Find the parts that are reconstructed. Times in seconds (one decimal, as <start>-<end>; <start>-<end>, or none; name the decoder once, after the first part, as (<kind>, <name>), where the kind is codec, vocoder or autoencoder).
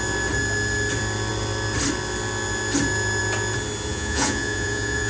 3.9-5.1 (vocoder, Vocos)